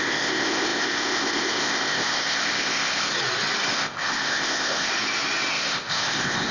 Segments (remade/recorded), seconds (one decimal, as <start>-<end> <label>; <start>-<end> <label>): 0.0-3.1 remade; 3.1-3.7 recorded; 3.7-4.9 remade; 4.9-5.5 recorded; 5.5-6.5 remade